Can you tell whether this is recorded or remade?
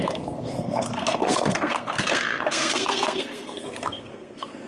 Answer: remade